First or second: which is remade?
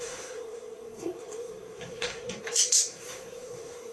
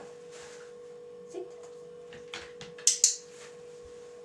first